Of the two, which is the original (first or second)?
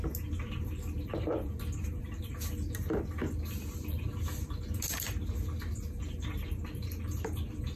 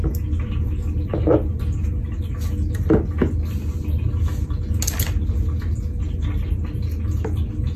second